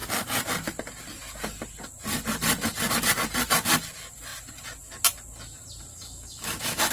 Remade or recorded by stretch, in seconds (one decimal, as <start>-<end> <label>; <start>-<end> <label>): 0.0-5.9 recorded; 5.9-6.9 remade